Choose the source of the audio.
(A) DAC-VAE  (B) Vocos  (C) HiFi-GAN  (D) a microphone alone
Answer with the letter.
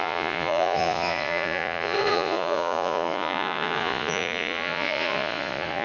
B